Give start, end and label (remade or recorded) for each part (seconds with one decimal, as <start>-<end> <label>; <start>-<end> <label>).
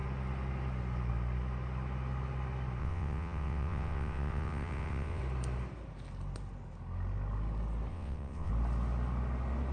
0.0-2.8 recorded; 2.8-5.2 remade; 5.2-7.9 recorded; 7.9-8.5 remade; 8.5-9.7 recorded